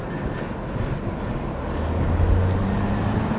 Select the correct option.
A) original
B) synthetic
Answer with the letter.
A